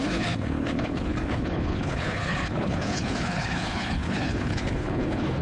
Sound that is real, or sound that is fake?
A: fake